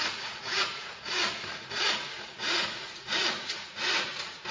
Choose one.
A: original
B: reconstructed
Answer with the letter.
B